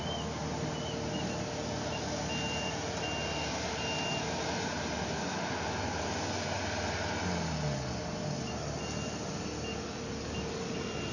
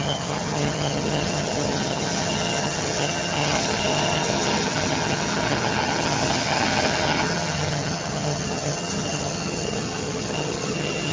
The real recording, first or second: first